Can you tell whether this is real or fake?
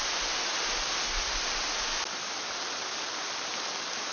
real